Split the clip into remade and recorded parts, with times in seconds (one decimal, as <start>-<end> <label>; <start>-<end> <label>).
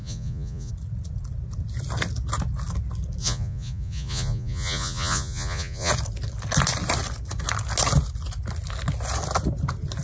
0.0-0.7 remade; 0.7-3.2 recorded; 3.2-5.9 remade; 5.9-10.0 recorded